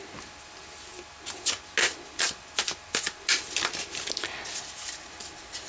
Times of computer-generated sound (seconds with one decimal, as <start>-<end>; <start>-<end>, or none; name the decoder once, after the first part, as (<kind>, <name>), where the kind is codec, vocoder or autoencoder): none